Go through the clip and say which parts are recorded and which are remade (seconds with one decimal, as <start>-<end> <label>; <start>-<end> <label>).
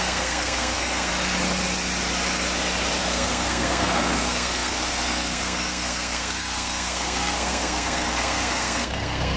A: 0.0-1.1 remade; 1.1-3.0 recorded; 3.0-9.4 remade